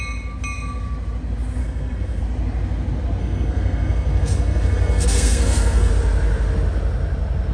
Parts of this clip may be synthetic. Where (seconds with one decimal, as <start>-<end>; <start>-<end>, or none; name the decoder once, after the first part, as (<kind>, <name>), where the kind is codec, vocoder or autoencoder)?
1.6-2.2 (codec, SNAC); 3.2-5.9